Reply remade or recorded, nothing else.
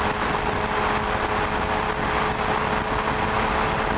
recorded